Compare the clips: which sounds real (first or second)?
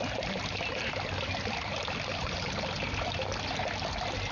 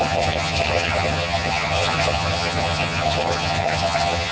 first